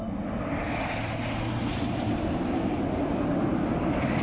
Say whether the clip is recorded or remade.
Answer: recorded